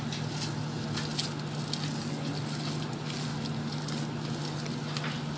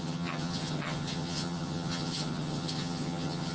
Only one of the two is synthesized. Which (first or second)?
second